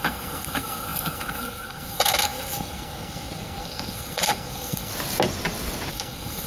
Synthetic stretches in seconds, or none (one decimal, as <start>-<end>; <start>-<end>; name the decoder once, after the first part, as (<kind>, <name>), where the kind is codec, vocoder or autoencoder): 0.0-4.9 (codec, SNAC); 5.9-6.5